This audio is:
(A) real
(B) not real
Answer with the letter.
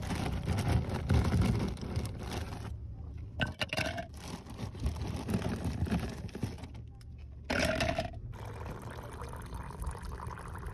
A